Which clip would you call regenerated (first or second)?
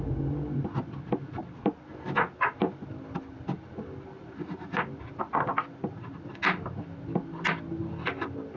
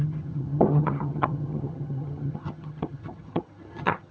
second